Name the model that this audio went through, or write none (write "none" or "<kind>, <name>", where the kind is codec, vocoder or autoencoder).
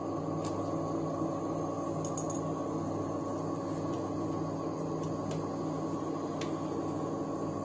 none